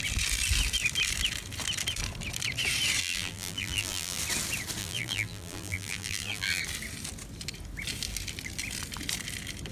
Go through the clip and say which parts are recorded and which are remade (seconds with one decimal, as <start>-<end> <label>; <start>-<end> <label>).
0.0-3.0 recorded; 3.0-4.2 remade; 4.2-4.8 recorded; 4.8-6.6 remade; 6.6-9.7 recorded